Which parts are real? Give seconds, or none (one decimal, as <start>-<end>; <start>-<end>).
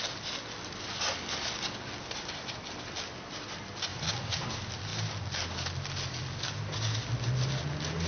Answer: 0.0-8.1